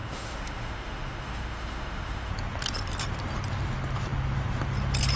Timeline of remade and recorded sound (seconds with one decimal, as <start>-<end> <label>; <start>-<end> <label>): 0.0-2.3 remade; 2.3-5.2 recorded